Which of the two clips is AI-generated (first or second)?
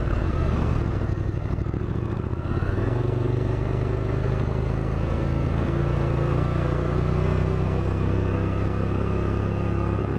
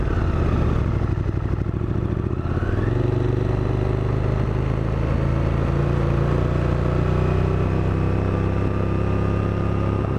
first